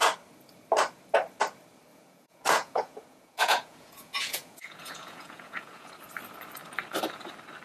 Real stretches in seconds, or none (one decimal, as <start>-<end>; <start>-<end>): 0.0-1.9; 5.9-7.6